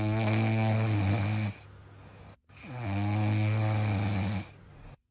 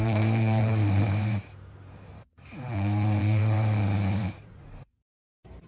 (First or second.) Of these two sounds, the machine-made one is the second